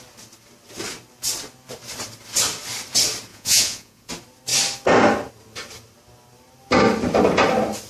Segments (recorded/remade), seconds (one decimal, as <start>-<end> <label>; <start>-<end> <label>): 0.0-3.3 recorded; 3.3-4.1 remade; 4.1-7.9 recorded